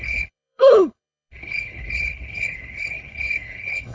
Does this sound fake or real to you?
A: fake